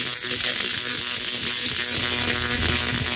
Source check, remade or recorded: recorded